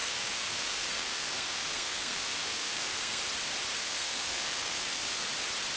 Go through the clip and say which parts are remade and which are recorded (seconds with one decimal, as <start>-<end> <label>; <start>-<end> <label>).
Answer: 0.0-3.2 remade; 3.2-3.8 recorded; 3.8-5.3 remade; 5.3-5.8 recorded